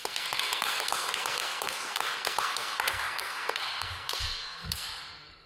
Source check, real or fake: fake